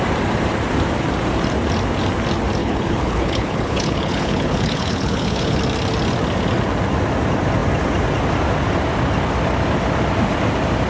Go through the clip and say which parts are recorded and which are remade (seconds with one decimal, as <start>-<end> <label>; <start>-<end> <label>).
0.0-2.6 recorded; 2.6-5.6 remade; 5.6-10.9 recorded